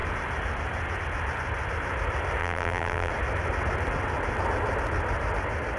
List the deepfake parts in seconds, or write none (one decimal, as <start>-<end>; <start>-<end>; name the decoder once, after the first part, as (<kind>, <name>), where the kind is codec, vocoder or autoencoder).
2.4-3.1 (vocoder, BigVGAN v2)